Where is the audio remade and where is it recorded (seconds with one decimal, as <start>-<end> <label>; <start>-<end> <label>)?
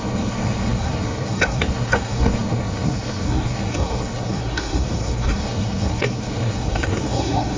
0.0-7.6 remade